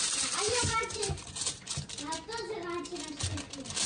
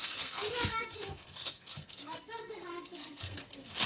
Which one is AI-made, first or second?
second